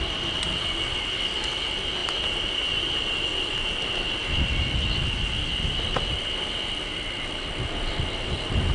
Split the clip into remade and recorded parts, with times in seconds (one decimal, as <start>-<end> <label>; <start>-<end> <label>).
0.0-8.7 recorded